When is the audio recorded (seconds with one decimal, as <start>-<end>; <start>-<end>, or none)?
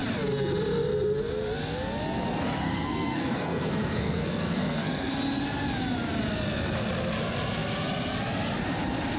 0.0-2.6; 5.1-9.2